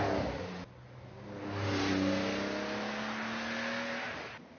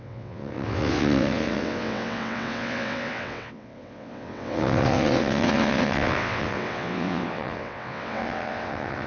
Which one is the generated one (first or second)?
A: second